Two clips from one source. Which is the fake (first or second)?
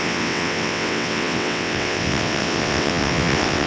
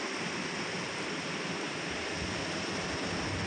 first